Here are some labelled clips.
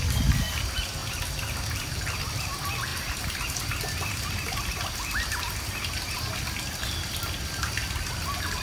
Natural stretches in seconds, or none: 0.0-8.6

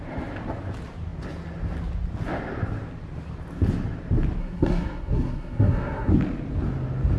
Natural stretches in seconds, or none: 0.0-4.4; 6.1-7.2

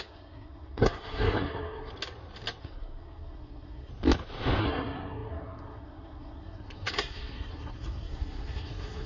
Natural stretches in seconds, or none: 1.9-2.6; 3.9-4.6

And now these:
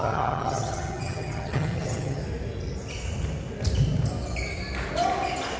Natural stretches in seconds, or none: 2.2-5.6